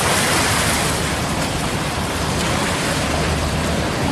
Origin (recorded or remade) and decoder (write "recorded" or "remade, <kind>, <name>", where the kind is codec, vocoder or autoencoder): remade, vocoder, BigVGAN v2